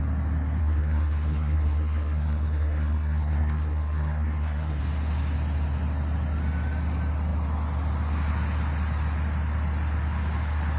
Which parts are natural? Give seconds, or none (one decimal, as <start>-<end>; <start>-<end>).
0.0-0.6; 4.8-10.8